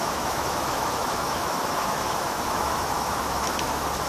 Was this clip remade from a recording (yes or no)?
yes